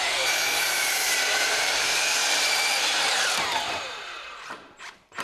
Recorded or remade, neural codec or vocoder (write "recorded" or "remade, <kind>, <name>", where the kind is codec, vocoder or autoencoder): remade, vocoder, BigVGAN v2